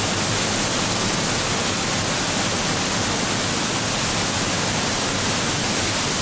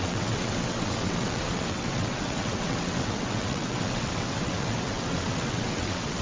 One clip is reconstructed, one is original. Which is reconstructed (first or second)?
second